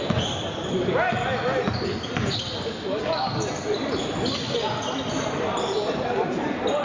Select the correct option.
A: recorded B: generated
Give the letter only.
A